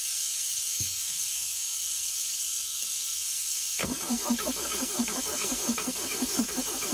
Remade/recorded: remade